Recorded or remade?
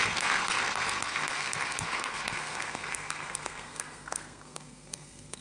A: remade